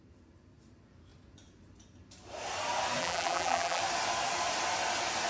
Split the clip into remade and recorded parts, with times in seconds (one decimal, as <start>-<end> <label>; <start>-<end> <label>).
0.0-3.0 recorded; 3.0-3.8 remade; 3.8-5.3 recorded